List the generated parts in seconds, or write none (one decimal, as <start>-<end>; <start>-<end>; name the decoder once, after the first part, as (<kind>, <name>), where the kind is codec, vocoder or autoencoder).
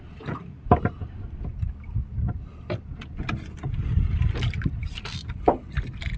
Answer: 0.0-6.2 (vocoder, BigVGAN v2)